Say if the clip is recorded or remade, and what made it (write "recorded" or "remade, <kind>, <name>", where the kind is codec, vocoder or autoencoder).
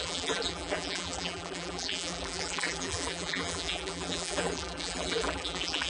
remade, vocoder, BigVGAN v2